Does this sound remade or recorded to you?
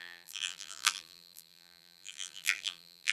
remade